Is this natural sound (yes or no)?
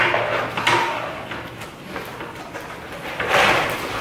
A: yes